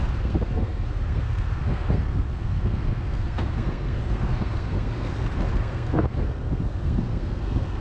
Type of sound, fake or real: fake